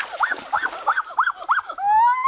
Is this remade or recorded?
recorded